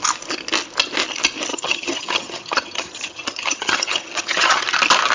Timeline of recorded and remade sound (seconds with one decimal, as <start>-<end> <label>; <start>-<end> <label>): 0.0-1.5 recorded; 1.5-4.6 remade; 4.6-5.1 recorded